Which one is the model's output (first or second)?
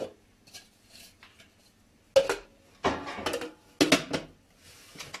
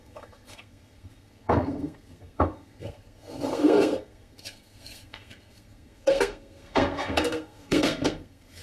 second